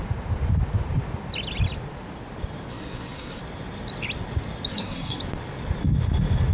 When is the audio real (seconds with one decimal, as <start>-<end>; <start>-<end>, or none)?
0.0-2.7; 3.4-4.7; 5.2-6.5